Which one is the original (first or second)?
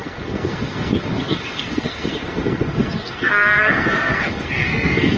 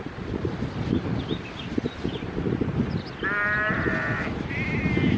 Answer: second